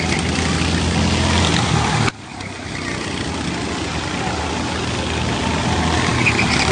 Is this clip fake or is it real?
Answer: real